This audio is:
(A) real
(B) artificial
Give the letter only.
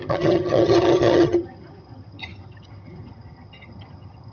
B